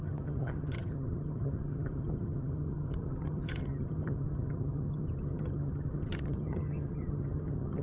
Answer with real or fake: fake